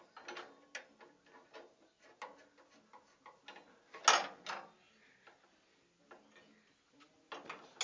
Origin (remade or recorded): recorded